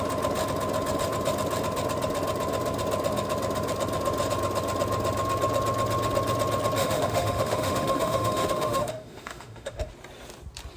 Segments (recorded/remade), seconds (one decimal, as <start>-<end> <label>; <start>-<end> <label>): 0.0-6.8 recorded; 6.8-9.9 remade; 9.9-10.8 recorded